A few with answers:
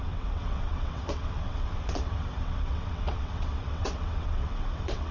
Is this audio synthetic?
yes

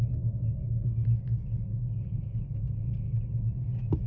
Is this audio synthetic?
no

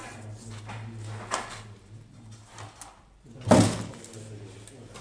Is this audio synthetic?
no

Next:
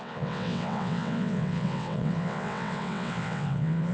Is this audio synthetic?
yes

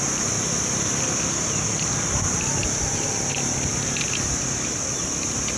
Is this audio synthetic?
no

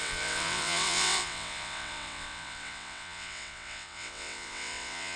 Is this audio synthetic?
yes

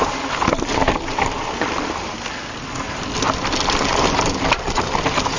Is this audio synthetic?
no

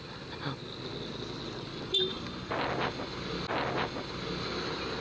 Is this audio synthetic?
no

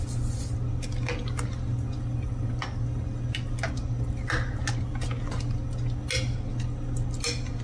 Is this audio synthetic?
no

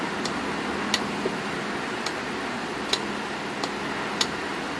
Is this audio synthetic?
no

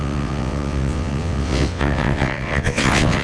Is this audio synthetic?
yes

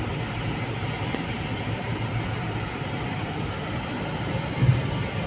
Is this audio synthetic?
no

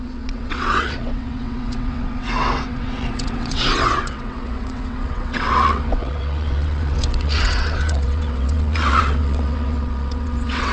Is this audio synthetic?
yes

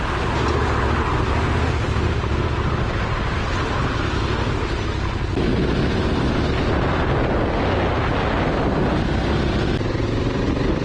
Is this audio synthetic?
no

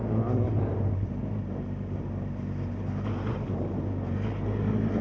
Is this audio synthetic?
no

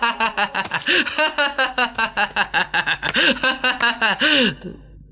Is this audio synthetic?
no